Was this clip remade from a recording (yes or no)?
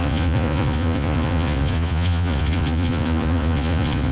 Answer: yes